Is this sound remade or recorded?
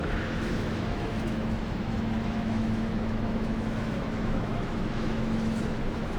remade